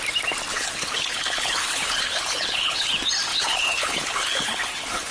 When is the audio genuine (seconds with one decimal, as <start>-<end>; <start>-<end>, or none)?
0.0-0.5; 2.9-3.3